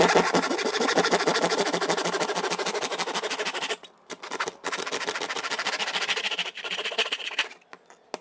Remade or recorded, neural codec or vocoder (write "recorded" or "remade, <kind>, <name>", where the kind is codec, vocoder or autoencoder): recorded